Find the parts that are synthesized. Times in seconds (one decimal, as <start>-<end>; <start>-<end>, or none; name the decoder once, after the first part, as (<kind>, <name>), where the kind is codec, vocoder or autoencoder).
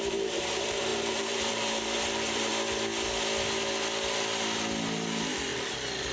0.0-2.5 (vocoder, BigVGAN v2)